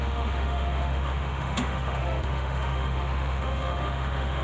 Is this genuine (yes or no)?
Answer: no